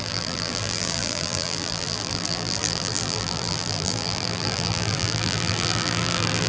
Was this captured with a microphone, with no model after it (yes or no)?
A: no